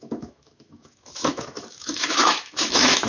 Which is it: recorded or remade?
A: remade